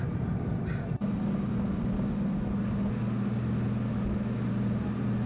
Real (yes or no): yes